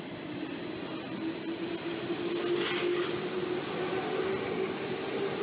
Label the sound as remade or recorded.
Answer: recorded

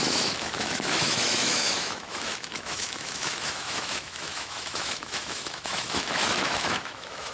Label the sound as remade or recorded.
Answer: remade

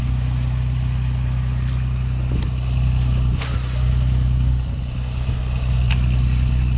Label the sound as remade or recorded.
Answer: recorded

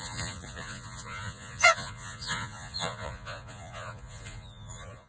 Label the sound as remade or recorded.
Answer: remade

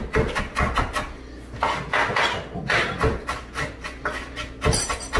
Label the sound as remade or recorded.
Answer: recorded